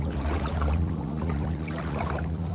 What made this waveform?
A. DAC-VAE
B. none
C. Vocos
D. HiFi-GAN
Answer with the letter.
C